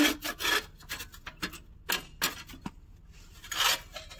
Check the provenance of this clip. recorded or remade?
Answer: recorded